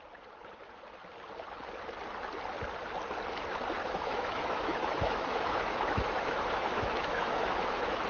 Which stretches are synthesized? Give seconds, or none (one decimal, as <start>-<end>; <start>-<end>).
3.8-8.1